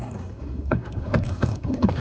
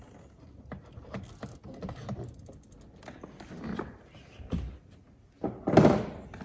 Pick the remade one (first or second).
first